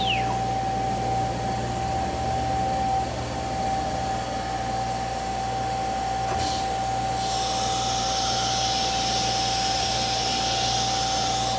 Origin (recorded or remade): recorded